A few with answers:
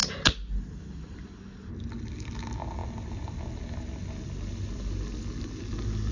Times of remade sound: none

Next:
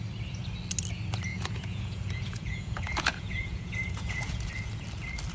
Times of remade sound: 1.3-4.5

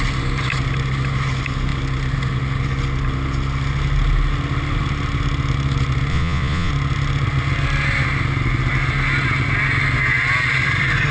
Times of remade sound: 6.1-6.7